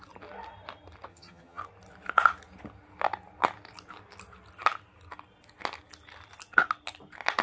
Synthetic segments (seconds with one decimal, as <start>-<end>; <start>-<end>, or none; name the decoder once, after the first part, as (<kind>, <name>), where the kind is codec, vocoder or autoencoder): 1.1-1.6 (vocoder, HiFi-GAN)